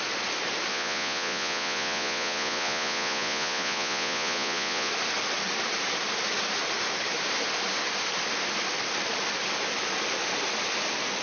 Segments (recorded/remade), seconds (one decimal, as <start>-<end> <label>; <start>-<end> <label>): 0.0-0.7 recorded; 0.7-4.9 remade; 4.9-11.2 recorded